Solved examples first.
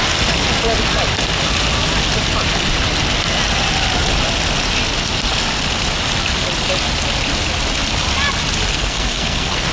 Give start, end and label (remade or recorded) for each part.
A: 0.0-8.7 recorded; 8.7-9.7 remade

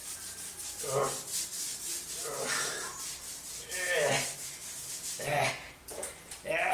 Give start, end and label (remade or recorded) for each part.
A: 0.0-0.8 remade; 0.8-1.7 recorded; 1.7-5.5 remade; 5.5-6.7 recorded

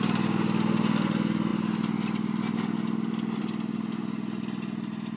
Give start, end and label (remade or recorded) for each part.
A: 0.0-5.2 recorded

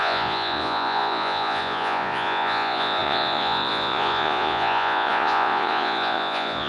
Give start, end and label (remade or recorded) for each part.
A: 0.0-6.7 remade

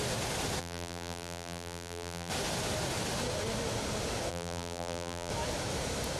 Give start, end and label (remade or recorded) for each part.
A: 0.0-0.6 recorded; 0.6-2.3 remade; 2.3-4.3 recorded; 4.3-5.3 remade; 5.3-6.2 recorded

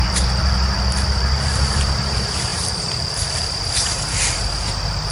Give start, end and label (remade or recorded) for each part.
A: 0.0-5.1 remade

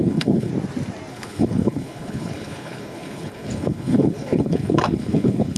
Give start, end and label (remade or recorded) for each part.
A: 0.0-0.5 remade; 0.5-1.1 recorded; 1.1-5.6 remade